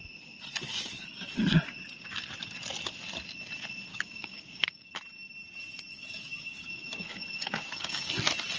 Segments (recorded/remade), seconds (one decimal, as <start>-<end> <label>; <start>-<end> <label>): 0.0-0.7 recorded; 0.7-1.4 remade; 1.4-3.9 recorded; 3.9-4.9 remade; 4.9-5.9 recorded; 5.9-8.1 remade; 8.1-8.6 recorded

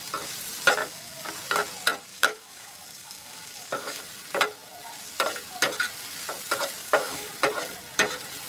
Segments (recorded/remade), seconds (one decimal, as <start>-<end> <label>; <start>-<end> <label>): 0.0-0.8 recorded; 0.8-1.3 remade; 1.3-2.1 recorded; 2.1-4.0 remade; 4.0-6.8 recorded; 6.8-7.3 remade; 7.3-8.5 recorded

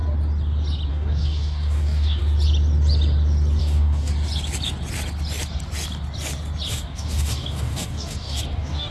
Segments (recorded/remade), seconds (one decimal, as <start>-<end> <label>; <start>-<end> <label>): 0.0-0.9 recorded; 0.9-2.2 remade; 2.2-3.6 recorded; 3.6-4.1 remade; 4.1-6.7 recorded; 6.7-8.9 remade

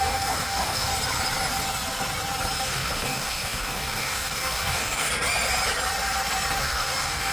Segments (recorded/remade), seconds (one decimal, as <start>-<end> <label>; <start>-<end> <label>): 0.0-0.9 remade; 0.9-2.6 recorded; 2.6-5.1 remade; 5.1-6.6 recorded; 6.6-7.3 remade

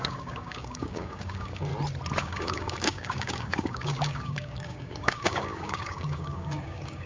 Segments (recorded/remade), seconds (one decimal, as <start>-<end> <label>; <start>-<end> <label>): 0.0-1.7 remade; 1.7-2.2 recorded; 2.2-7.1 remade

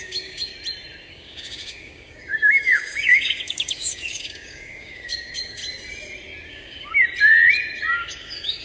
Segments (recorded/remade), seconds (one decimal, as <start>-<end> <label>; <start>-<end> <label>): 0.0-0.5 remade; 0.5-1.1 recorded; 1.1-5.6 remade; 5.6-6.5 recorded; 6.5-6.9 remade; 6.9-7.9 recorded; 7.9-8.6 remade